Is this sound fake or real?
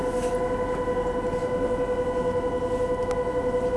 real